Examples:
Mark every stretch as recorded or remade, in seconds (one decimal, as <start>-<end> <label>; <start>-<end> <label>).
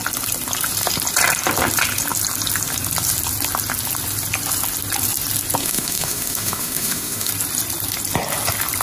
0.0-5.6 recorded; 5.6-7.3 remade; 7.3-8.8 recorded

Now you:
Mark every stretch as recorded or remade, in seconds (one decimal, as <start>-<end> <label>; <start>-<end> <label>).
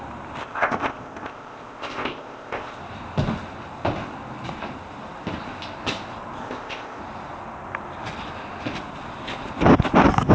0.0-0.4 recorded; 0.4-2.8 remade; 2.8-6.4 recorded; 6.4-7.0 remade; 7.0-10.3 recorded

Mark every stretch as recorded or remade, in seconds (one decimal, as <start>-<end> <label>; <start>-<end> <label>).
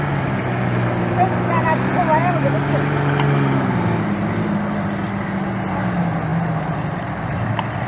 0.0-2.2 recorded; 2.2-4.3 remade; 4.3-6.3 recorded; 6.3-7.9 remade